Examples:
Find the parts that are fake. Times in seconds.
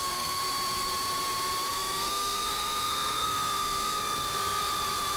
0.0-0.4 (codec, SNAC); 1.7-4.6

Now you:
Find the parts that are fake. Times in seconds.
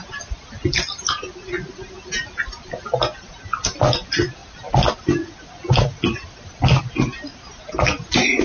none